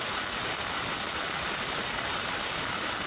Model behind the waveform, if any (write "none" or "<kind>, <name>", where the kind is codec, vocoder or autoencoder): vocoder, BigVGAN v2